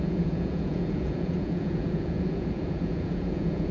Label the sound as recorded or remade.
remade